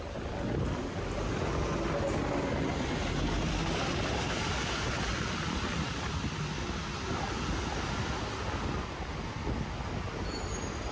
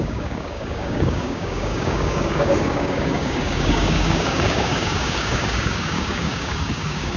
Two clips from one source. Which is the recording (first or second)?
first